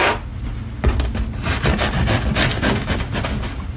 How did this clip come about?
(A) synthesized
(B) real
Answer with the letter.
B